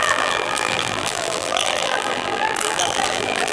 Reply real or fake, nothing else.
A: fake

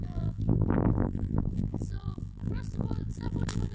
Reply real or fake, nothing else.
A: fake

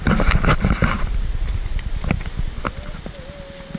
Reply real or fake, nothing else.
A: real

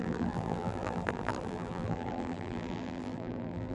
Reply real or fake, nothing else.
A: fake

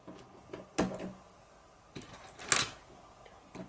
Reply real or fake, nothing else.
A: real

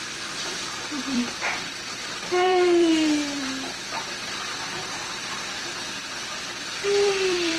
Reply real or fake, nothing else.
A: fake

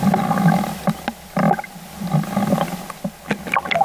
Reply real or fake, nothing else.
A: real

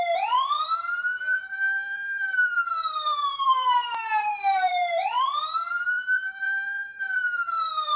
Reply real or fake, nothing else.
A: fake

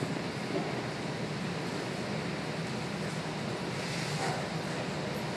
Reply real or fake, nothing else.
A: real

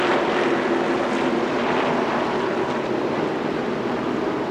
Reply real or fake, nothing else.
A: real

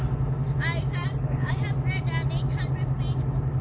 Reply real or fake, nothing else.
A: real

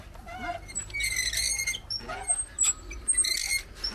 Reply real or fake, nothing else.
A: real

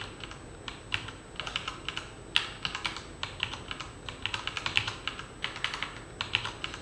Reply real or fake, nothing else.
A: real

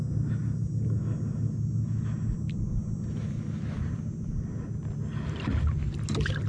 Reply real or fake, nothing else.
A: real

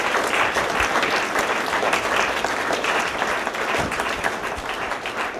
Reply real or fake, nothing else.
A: fake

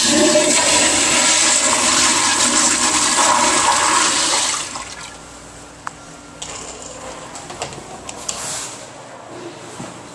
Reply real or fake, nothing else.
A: real